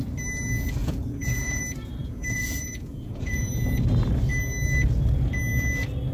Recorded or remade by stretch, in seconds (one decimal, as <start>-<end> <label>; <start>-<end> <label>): 0.0-0.8 recorded; 0.8-1.6 remade; 1.6-2.0 recorded; 2.0-3.6 remade; 3.6-6.1 recorded